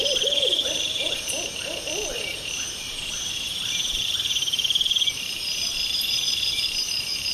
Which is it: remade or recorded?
remade